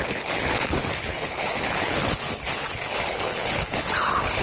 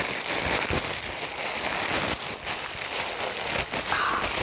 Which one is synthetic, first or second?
first